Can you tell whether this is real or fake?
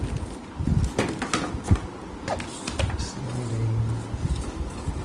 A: real